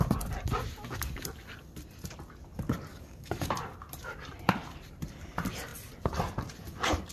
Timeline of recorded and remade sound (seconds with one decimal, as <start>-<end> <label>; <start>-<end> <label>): 0.0-2.9 recorded; 2.9-3.5 remade; 3.5-7.1 recorded